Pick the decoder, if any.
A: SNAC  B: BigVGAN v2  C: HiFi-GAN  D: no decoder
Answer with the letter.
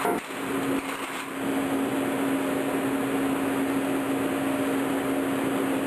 D